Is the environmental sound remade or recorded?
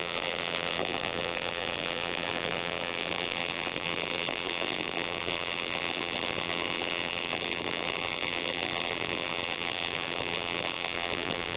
remade